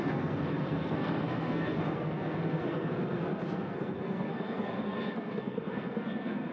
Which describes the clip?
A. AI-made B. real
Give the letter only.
A